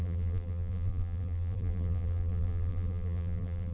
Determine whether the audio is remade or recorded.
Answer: remade